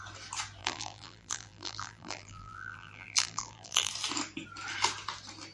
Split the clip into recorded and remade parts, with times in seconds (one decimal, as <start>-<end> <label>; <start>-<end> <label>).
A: 0.0-0.6 recorded; 0.6-3.9 remade; 3.9-5.5 recorded